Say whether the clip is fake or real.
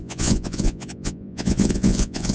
fake